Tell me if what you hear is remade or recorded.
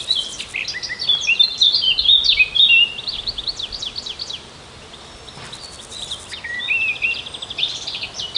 recorded